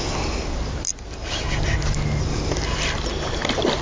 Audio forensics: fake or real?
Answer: real